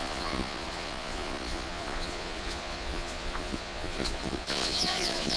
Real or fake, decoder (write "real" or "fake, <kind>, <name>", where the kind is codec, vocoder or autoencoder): fake, vocoder, Vocos